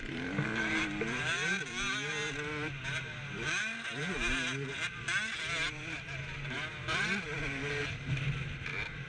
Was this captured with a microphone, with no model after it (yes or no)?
yes